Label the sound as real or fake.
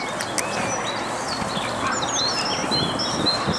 real